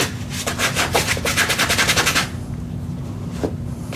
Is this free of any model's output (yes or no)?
no